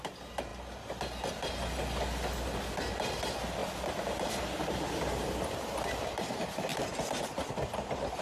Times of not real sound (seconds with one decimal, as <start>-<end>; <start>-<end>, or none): 3.6-6.3